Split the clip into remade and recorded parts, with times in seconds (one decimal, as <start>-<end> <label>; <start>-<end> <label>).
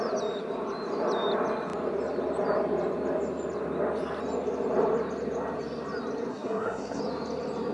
0.0-6.3 recorded; 6.3-7.0 remade; 7.0-7.7 recorded